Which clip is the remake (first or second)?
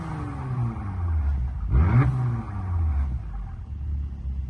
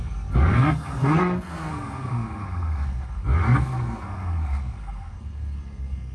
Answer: second